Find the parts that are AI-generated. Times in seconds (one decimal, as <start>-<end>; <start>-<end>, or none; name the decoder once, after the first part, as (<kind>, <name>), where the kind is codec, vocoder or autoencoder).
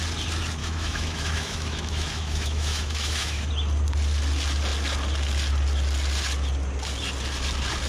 0.6-3.5 (autoencoder, DAC-VAE)